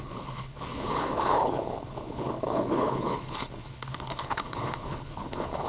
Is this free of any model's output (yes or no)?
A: no